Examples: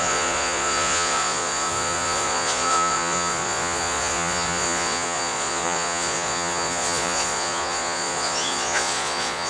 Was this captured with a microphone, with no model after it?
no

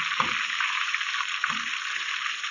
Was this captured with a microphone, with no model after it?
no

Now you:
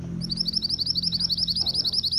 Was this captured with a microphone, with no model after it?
yes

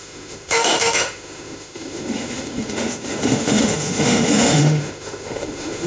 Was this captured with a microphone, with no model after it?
no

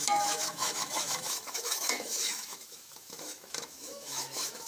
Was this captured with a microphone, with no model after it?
no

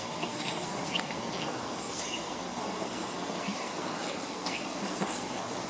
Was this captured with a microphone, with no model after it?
no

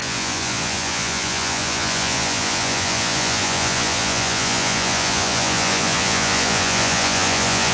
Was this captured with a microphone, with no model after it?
no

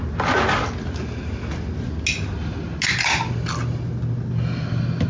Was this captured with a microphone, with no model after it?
yes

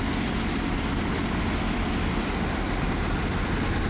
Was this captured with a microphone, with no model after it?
yes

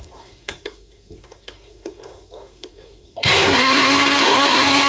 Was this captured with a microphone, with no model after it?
no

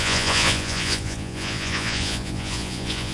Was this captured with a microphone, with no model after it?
no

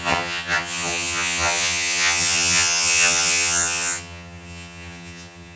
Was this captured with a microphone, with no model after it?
no